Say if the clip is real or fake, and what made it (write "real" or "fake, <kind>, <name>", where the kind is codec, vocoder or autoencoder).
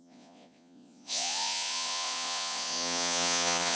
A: fake, vocoder, Vocos